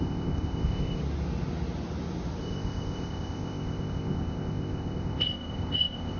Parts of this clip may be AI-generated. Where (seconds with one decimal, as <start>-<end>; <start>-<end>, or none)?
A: 0.0-1.0; 2.4-6.2